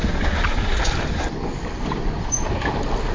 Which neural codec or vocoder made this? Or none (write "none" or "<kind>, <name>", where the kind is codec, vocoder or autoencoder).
none